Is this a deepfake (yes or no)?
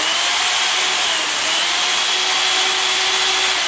no